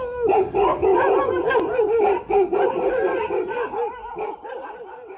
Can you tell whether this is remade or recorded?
recorded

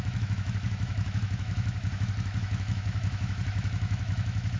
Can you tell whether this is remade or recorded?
remade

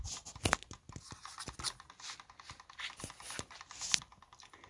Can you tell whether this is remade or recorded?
recorded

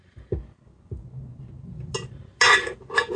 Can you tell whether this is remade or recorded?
recorded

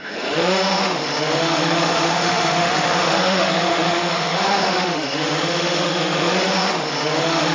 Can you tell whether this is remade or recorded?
remade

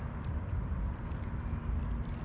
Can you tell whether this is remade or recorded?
recorded